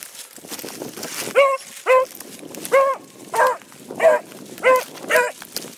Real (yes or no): yes